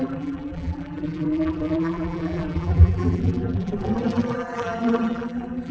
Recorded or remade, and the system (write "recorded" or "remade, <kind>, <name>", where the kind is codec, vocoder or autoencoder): remade, vocoder, BigVGAN v2